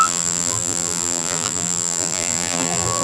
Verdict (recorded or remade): remade